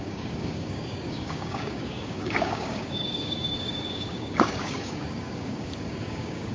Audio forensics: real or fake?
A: fake